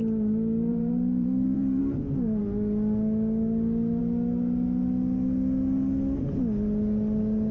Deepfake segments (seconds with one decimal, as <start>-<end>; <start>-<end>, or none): 0.7-1.8